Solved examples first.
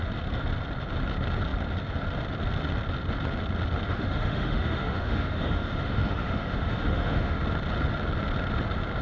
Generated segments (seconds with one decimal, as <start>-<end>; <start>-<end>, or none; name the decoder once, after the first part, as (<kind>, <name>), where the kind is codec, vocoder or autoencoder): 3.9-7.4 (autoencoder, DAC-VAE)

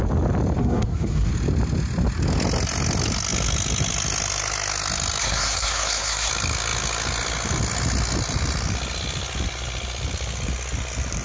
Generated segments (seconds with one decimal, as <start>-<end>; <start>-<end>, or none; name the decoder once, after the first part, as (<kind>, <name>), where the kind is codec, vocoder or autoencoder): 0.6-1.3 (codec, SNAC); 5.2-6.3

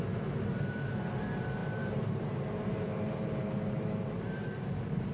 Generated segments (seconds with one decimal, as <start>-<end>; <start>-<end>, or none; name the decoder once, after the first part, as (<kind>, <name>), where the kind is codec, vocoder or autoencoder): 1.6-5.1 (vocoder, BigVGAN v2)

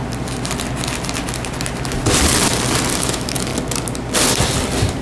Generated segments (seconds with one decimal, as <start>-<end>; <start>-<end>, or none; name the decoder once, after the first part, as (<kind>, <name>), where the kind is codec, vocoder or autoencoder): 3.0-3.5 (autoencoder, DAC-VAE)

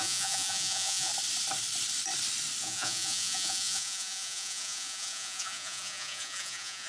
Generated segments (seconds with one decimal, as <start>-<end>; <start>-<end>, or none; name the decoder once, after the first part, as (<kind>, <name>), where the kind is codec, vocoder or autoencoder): 0.0-1.1 (vocoder, Vocos); 2.6-6.9

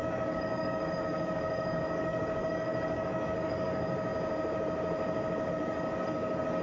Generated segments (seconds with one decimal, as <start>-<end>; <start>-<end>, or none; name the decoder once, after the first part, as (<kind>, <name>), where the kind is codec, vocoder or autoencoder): 0.0-4.1 (codec, DAC); 5.5-6.6

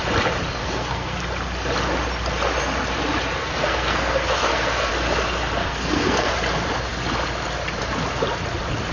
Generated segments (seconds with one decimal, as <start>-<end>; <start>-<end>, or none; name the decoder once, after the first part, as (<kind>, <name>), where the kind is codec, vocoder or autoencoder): 0.6-1.2 (codec, SNAC); 3.4-4.9; 5.6-6.3